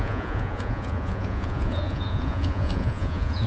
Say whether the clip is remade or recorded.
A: remade